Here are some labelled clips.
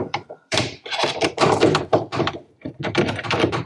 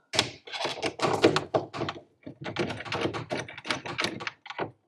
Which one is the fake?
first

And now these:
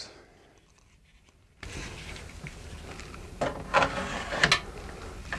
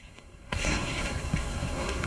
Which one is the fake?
second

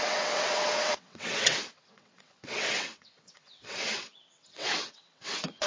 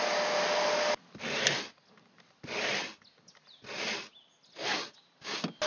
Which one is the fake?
first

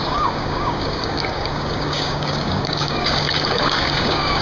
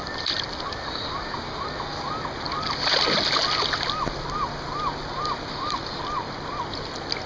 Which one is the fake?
first